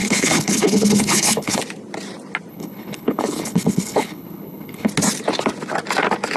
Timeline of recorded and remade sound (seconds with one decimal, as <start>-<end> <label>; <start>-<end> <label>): 0.0-1.6 remade; 1.6-2.5 recorded; 2.5-4.9 remade; 4.9-6.4 recorded